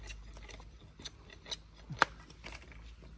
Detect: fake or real real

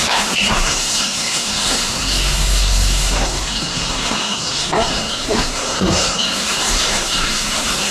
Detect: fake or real fake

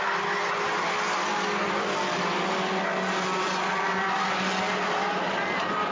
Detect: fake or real real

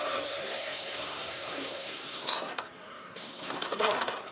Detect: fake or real fake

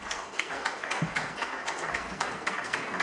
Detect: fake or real fake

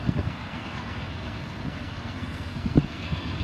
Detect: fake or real fake